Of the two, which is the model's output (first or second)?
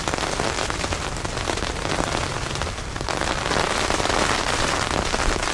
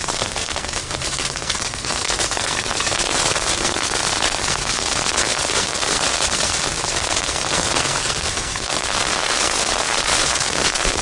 second